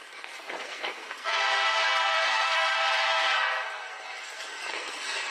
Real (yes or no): no